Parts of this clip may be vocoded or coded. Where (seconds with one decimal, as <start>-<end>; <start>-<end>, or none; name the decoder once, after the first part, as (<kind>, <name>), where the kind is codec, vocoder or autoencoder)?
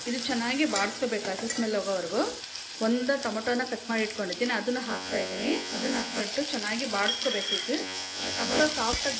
4.9-6.2 (vocoder, Vocos); 7.8-8.6